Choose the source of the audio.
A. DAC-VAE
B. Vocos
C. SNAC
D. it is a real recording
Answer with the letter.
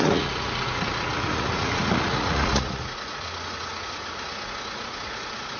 B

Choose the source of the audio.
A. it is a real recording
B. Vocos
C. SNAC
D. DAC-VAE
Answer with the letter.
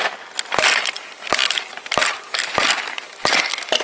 A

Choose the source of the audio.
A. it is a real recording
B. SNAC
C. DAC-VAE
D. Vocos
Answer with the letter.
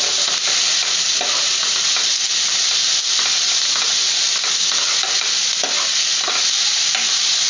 A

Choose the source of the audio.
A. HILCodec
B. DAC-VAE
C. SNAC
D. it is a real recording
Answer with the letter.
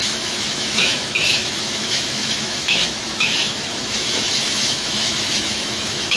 B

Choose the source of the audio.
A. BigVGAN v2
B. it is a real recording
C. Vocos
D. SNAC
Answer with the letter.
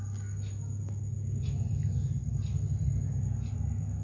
B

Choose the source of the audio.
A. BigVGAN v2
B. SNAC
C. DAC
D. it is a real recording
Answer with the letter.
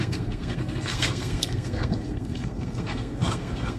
B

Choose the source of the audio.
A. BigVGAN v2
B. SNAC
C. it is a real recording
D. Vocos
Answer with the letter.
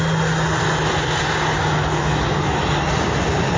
C